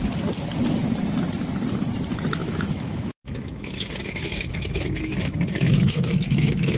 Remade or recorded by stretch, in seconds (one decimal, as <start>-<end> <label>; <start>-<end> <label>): 0.0-2.4 recorded; 2.4-6.8 remade